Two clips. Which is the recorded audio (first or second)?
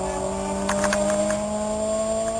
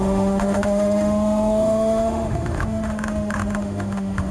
first